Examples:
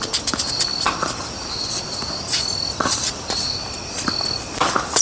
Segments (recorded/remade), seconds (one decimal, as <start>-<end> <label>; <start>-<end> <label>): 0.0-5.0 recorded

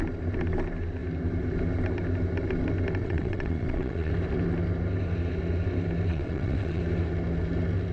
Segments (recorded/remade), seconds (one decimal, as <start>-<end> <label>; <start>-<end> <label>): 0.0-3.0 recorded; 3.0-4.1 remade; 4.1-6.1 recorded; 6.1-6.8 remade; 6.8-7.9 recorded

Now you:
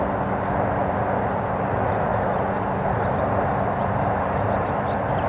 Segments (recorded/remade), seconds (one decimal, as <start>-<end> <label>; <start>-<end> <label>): 0.0-5.3 recorded

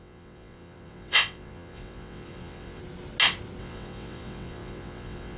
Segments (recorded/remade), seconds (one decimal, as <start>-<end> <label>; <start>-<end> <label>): 0.0-2.8 remade; 2.8-3.6 recorded; 3.6-5.4 remade